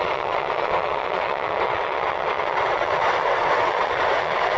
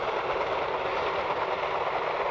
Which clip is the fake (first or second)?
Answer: first